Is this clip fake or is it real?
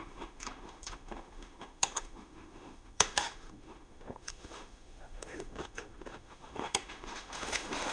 fake